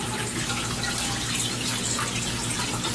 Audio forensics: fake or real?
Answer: real